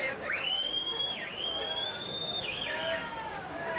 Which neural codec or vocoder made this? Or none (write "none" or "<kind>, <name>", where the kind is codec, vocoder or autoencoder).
codec, DAC